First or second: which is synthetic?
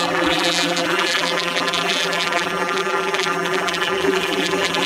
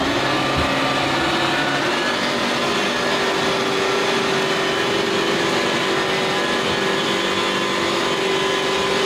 first